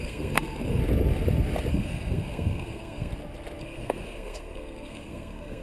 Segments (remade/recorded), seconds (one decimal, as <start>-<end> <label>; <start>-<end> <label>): 0.0-0.8 remade; 0.8-1.7 recorded; 1.7-3.1 remade; 3.1-3.6 recorded; 3.6-5.6 remade